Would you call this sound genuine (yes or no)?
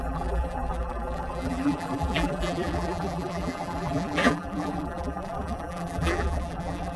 no